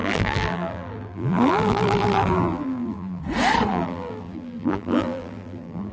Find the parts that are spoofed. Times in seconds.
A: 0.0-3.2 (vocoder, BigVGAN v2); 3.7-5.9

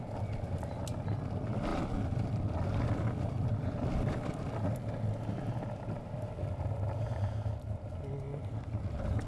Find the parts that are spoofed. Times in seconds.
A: 1.7-4.3 (vocoder, BigVGAN v2)

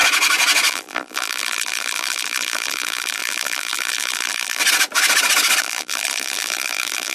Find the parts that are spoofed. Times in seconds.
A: 0.7-4.6 (vocoder, BigVGAN v2); 5.6-7.1